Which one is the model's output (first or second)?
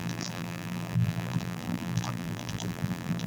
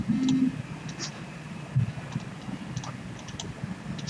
first